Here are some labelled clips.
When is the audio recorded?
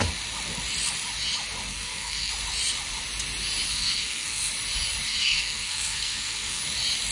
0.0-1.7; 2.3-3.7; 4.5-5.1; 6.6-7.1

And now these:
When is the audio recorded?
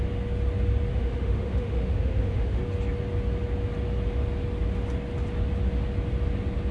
0.0-0.9; 2.6-6.7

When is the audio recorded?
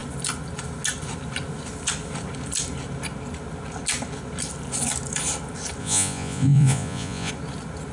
0.0-5.8; 7.3-7.9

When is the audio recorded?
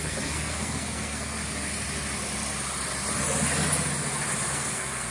1.4-4.5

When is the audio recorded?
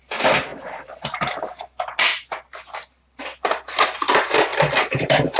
0.0-0.5; 1.5-5.4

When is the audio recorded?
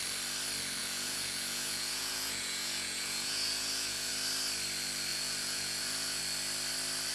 0.0-0.8; 4.1-5.1; 6.2-7.1